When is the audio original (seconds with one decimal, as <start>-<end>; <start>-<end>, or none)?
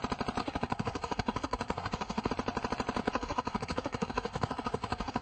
0.0-0.4; 2.3-3.0